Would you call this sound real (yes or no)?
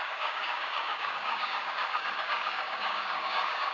no